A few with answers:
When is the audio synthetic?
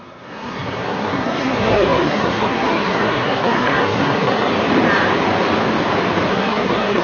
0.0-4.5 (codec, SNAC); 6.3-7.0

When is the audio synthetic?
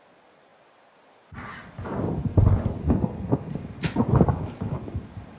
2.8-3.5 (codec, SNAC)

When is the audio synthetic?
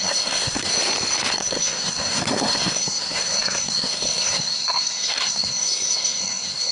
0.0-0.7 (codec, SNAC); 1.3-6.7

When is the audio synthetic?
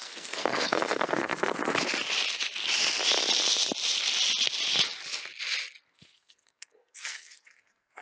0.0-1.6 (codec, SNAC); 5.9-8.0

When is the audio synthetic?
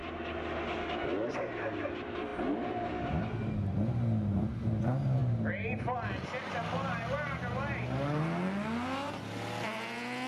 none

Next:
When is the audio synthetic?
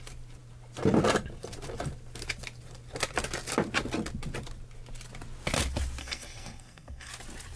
6.0-7.1 (codec, SNAC)